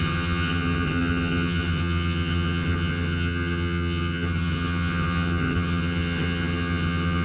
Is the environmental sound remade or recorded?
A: remade